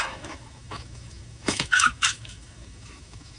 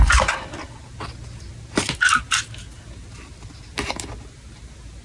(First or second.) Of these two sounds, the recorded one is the second